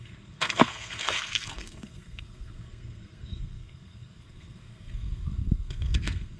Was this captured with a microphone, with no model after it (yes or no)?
no